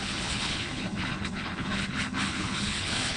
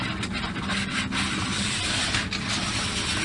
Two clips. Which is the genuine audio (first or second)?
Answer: second